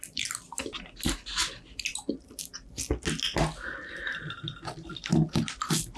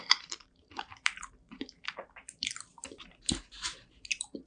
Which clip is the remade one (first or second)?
second